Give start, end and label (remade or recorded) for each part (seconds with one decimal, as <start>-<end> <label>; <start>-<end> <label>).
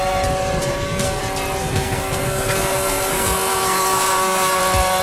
0.0-0.6 recorded; 0.6-1.2 remade; 1.2-1.6 recorded; 1.6-4.6 remade; 4.6-5.0 recorded